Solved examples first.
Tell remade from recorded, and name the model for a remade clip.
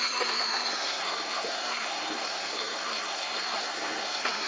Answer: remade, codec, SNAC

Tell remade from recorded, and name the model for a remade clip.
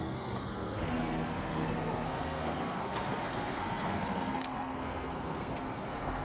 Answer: remade, codec, SNAC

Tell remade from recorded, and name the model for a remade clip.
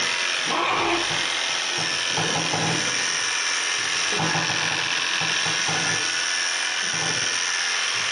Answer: recorded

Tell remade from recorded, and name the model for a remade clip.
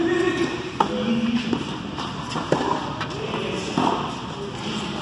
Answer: recorded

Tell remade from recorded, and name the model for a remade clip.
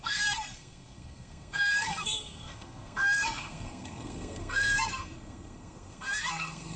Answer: remade, codec, SNAC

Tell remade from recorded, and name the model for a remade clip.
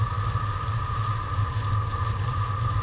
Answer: recorded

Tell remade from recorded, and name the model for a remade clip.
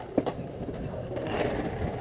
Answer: recorded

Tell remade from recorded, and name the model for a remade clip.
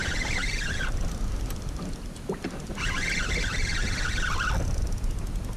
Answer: recorded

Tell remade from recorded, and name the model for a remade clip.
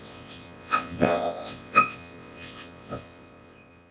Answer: remade, vocoder, WaveNeXt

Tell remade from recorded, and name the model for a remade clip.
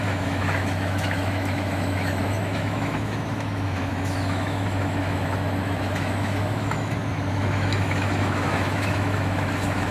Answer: remade, autoencoder, DAC-VAE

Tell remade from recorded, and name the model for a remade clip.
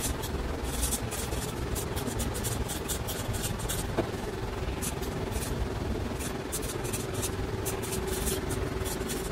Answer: recorded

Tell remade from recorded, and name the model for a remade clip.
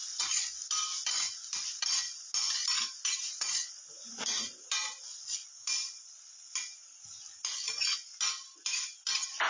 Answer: recorded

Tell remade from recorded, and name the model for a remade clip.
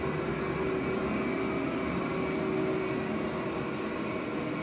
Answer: recorded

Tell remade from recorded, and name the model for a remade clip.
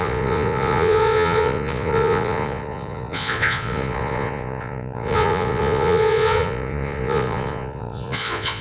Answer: remade, vocoder, Vocos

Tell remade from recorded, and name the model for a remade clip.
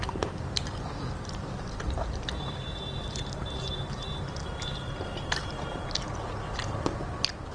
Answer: remade, vocoder, BigVGAN v2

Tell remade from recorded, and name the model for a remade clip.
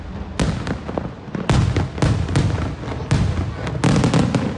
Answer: recorded